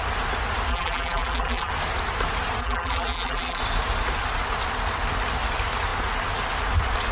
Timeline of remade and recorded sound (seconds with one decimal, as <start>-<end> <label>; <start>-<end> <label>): 0.0-0.7 recorded; 0.7-1.7 remade; 1.7-2.6 recorded; 2.6-3.6 remade; 3.6-7.1 recorded